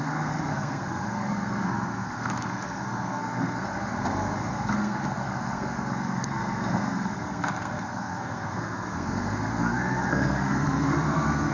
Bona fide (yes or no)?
no